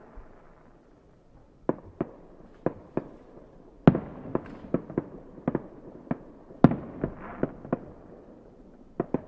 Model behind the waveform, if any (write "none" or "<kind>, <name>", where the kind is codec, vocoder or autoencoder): none